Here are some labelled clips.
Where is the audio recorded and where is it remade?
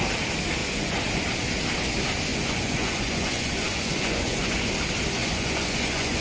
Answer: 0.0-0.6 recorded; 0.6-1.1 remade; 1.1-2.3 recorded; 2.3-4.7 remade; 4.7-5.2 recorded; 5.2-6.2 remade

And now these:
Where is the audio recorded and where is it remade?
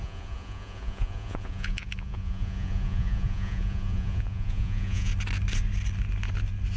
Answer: 0.0-5.1 remade; 5.1-6.8 recorded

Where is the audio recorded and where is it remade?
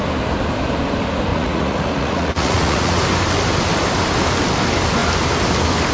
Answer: 0.0-1.3 recorded; 1.3-3.0 remade; 3.0-5.9 recorded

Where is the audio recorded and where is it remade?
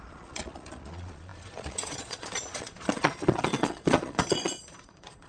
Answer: 0.0-5.3 remade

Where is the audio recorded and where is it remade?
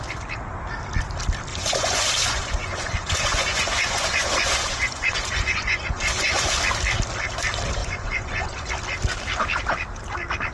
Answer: 0.0-1.5 recorded; 1.5-6.5 remade; 6.5-7.8 recorded; 7.8-8.7 remade; 8.7-10.5 recorded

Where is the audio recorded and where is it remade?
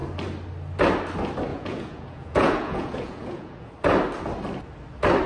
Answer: 0.0-1.5 recorded; 1.5-3.7 remade; 3.7-5.3 recorded